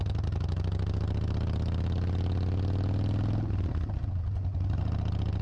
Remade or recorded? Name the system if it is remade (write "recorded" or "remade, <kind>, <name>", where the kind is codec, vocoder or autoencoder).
recorded